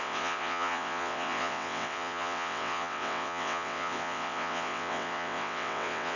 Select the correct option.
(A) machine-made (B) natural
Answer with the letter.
A